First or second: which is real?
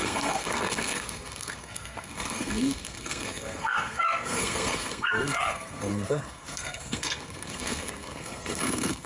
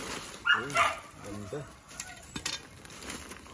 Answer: second